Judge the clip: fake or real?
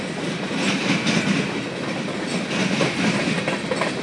fake